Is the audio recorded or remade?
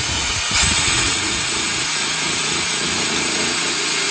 remade